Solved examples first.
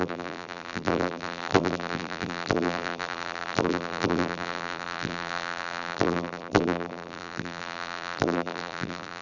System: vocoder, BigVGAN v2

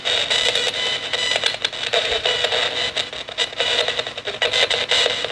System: none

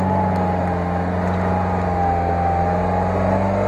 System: none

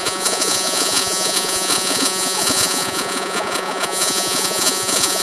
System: vocoder, Vocos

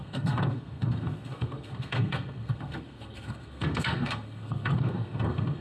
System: codec, SNAC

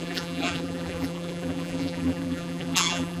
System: vocoder, BigVGAN v2